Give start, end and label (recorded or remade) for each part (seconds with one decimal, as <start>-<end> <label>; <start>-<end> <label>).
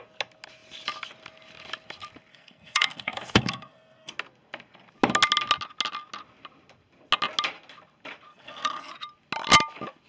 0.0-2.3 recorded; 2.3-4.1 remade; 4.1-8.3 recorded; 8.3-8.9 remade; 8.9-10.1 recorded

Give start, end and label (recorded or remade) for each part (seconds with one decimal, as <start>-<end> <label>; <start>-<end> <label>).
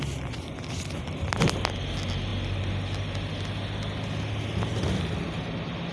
0.0-5.9 recorded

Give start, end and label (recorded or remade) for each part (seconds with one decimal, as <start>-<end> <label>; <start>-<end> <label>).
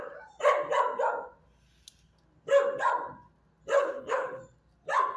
0.0-3.8 recorded; 3.8-4.4 remade; 4.4-5.2 recorded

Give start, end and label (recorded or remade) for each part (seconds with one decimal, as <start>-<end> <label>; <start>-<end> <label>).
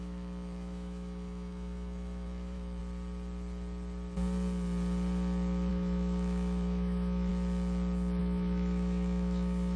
0.0-2.8 remade; 2.8-5.7 recorded; 5.7-7.3 remade; 7.3-8.2 recorded; 8.2-9.8 remade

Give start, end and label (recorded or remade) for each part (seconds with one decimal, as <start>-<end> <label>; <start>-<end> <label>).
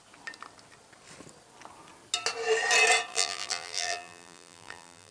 0.0-3.1 recorded; 3.1-5.1 remade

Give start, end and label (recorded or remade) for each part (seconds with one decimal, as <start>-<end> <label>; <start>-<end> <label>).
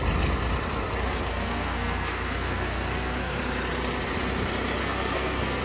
0.0-1.3 recorded; 1.3-3.4 remade; 3.4-4.8 recorded; 4.8-5.6 remade